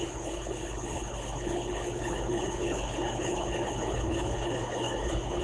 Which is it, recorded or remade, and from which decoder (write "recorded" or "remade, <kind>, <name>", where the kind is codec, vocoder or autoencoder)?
remade, codec, HILCodec